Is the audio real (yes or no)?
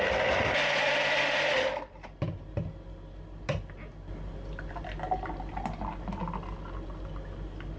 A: yes